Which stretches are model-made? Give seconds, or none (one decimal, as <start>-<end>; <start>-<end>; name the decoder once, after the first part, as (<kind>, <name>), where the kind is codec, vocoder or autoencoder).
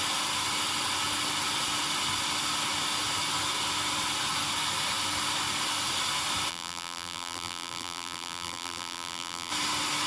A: 6.5-9.5 (vocoder, BigVGAN v2)